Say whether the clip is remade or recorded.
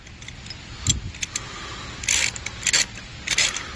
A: recorded